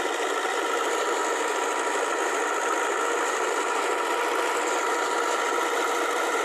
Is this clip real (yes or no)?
yes